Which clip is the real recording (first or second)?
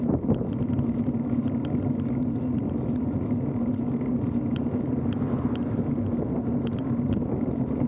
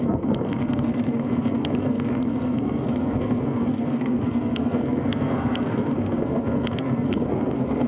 first